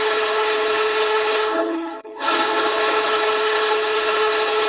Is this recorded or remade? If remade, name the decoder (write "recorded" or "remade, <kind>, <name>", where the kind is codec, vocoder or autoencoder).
remade, codec, HILCodec